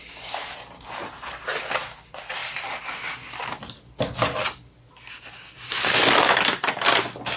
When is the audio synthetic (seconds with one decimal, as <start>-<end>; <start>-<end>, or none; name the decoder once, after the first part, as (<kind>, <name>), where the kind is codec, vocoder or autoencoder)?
none